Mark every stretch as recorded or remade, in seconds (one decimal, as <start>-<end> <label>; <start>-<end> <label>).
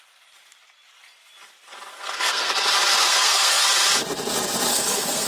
0.0-1.9 recorded; 1.9-2.5 remade; 2.5-3.0 recorded; 3.0-3.7 remade; 3.7-4.7 recorded; 4.7-5.3 remade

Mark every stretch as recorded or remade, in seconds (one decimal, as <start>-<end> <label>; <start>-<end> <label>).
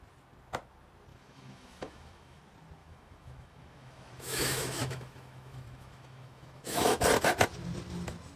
0.0-1.1 recorded; 1.1-2.4 remade; 2.4-2.8 recorded; 2.8-7.0 remade; 7.0-8.4 recorded